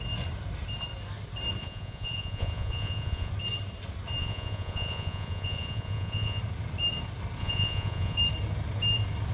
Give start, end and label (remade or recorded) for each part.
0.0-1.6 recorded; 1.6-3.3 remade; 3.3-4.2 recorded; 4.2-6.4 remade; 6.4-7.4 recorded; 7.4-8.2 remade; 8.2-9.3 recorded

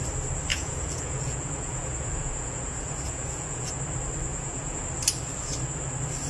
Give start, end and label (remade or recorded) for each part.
0.0-0.5 recorded; 0.5-3.7 remade; 3.7-4.3 recorded; 4.3-4.8 remade; 4.8-6.3 recorded

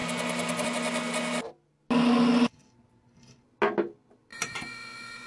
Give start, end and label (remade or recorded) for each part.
0.0-4.3 recorded; 4.3-5.3 remade

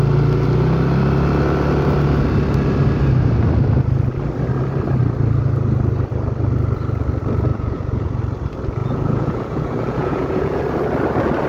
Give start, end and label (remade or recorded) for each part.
0.0-7.5 recorded; 7.5-8.2 remade; 8.2-8.8 recorded; 8.8-10.6 remade; 10.6-11.5 recorded

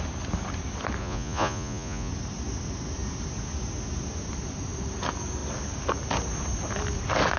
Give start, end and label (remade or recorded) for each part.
0.0-1.0 recorded; 1.0-2.1 remade; 2.1-7.4 recorded

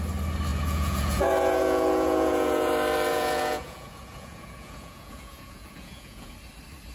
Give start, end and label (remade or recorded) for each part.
0.0-0.5 recorded; 0.5-2.7 remade; 2.7-3.1 recorded; 3.1-6.3 remade; 6.3-6.9 recorded